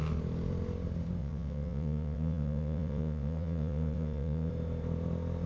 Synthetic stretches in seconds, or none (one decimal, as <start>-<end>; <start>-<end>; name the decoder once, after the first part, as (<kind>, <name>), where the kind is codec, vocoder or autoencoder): 1.2-4.5 (vocoder, WaveNeXt)